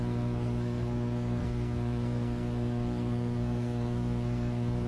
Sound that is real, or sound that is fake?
fake